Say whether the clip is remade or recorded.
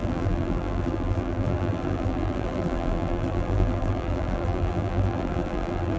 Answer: remade